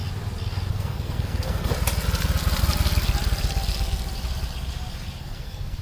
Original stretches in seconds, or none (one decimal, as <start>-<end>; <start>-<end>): 0.0-0.7; 1.7-5.2